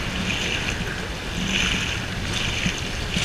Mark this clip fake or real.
real